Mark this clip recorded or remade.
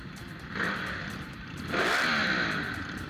remade